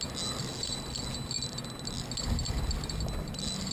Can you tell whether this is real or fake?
real